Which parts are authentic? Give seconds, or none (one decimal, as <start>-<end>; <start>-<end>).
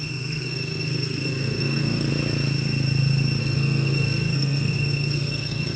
2.1-3.4